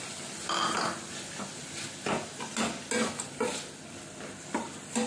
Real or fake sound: real